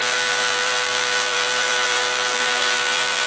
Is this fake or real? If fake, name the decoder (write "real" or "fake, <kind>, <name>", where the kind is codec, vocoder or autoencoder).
fake, vocoder, BigVGAN v2